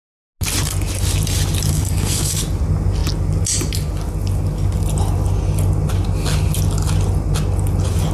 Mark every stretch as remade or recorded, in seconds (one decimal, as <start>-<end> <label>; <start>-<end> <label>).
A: 0.0-1.7 recorded; 1.7-2.4 remade; 2.4-8.1 recorded